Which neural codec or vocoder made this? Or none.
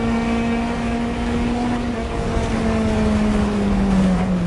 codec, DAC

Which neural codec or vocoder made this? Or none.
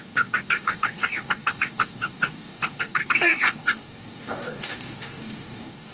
codec, DAC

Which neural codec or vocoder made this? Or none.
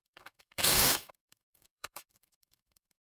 codec, DAC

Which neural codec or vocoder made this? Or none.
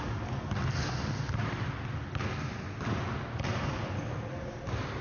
none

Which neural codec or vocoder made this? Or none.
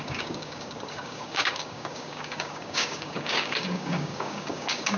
codec, DAC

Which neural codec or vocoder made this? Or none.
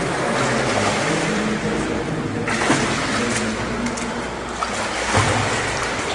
none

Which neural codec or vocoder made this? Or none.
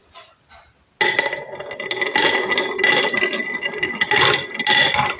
none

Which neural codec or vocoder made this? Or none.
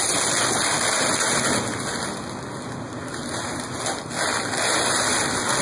none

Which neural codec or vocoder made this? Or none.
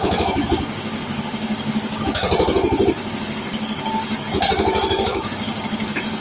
codec, DAC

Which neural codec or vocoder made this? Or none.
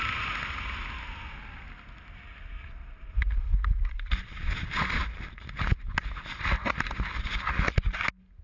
none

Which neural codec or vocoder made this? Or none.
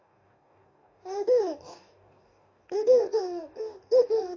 codec, DAC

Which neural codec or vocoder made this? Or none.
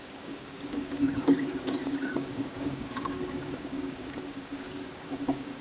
codec, DAC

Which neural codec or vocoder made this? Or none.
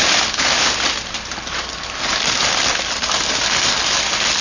none